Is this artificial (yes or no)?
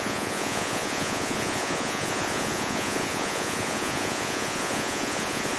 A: yes